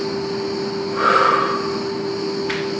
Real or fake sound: real